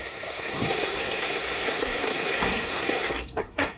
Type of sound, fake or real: fake